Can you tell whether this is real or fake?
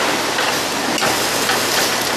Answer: real